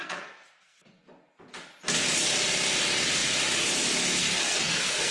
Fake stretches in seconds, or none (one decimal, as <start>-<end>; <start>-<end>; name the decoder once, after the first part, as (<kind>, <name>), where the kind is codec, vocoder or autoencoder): 0.0-0.9 (codec, SNAC); 4.2-5.1